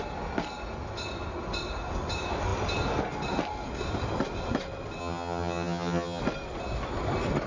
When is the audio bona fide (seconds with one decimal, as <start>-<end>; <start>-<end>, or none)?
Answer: 0.0-5.0; 6.2-7.5